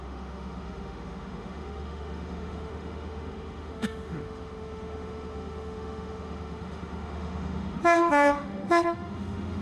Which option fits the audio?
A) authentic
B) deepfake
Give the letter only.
B